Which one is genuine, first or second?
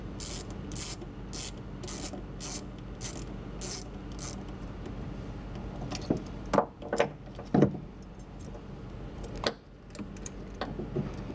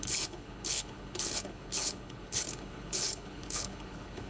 first